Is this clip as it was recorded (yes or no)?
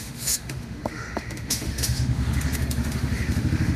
no